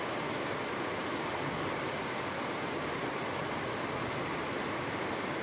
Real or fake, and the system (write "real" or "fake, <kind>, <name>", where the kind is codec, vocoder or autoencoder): real